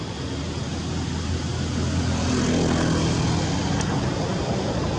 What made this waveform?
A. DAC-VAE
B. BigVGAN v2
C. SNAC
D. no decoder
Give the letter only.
D